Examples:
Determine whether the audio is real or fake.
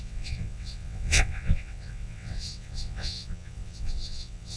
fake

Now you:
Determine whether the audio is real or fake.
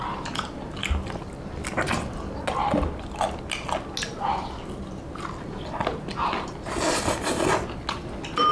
real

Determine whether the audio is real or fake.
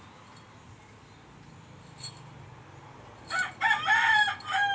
real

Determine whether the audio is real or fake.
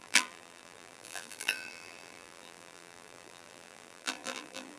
fake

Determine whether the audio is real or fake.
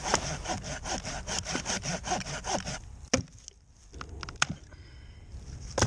real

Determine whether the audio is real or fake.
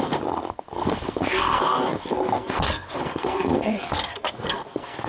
fake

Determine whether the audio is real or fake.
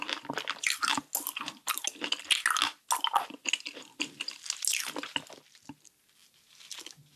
real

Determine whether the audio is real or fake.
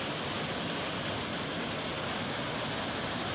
real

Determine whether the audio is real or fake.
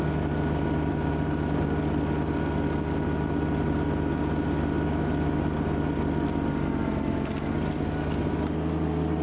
real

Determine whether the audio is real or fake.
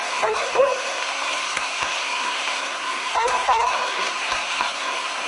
fake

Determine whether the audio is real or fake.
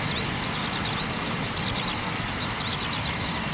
real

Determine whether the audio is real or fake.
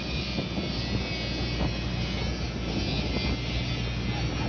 real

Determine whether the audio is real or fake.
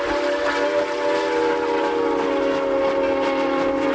real